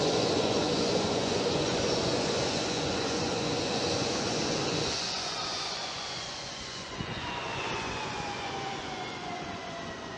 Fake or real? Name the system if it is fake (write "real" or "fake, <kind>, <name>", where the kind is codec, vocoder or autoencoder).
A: fake, vocoder, Vocos